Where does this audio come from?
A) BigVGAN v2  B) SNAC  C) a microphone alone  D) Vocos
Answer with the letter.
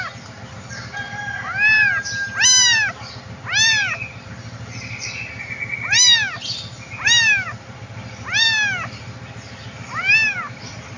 C